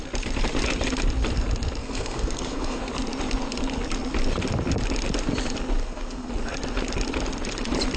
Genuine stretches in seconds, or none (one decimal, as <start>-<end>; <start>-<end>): 0.0-1.8; 2.8-5.8; 6.3-8.0